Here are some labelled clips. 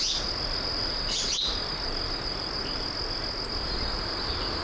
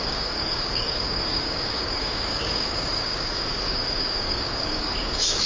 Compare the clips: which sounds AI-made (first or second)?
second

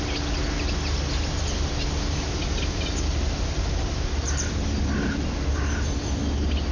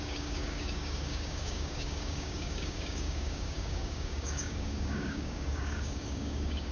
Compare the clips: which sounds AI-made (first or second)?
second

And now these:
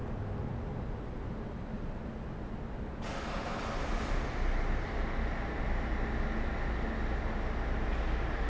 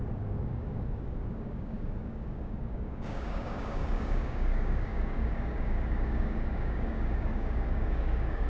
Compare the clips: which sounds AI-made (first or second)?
second